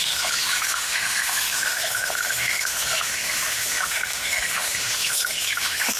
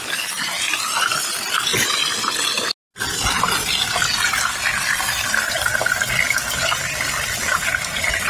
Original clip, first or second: second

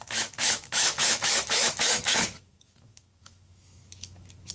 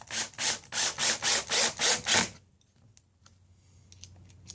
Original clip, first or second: second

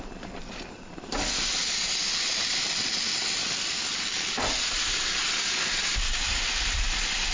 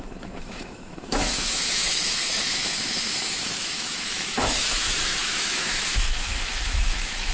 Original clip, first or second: first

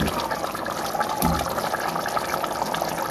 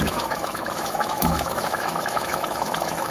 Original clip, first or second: first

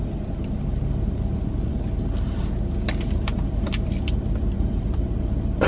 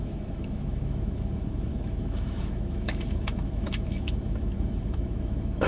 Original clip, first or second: first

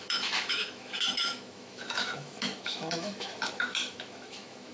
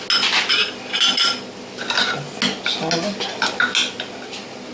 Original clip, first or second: second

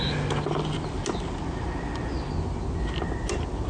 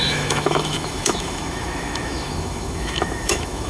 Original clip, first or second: first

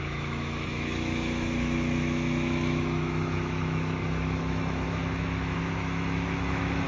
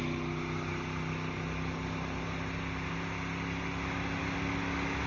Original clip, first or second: second